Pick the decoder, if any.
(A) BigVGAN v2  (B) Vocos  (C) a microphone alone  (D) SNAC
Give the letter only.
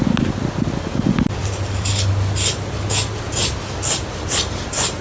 C